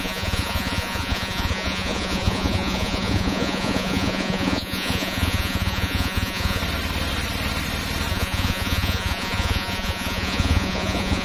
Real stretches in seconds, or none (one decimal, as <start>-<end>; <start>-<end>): 6.6-8.1